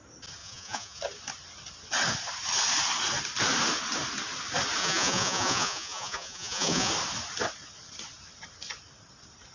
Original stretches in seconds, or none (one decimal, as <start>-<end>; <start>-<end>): 0.0-0.4; 1.0-4.8; 6.9-9.5